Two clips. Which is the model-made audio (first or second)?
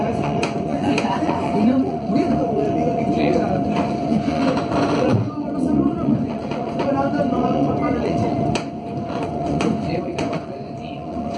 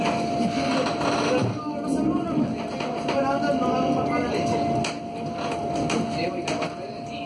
first